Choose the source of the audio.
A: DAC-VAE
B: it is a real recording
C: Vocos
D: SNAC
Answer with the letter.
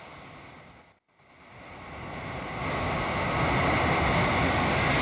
B